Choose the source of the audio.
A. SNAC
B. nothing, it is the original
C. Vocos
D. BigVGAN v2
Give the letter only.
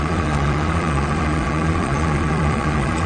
C